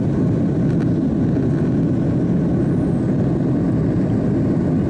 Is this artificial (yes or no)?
no